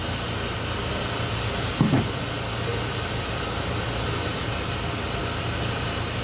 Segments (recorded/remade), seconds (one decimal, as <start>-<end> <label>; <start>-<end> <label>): 0.0-6.2 recorded